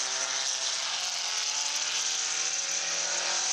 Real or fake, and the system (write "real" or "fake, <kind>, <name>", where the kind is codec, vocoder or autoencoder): real